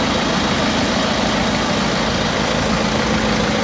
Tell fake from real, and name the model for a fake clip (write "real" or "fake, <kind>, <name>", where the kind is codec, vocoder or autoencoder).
real